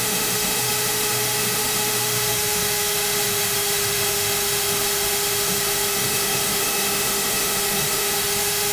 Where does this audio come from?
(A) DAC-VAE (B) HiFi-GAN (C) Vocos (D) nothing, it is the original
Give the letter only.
A